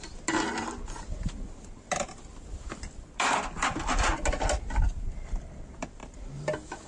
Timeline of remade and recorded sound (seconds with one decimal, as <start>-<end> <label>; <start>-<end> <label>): 0.0-6.9 recorded